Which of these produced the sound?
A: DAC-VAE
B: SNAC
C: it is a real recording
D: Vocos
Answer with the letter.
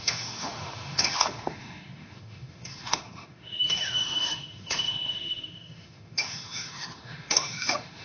A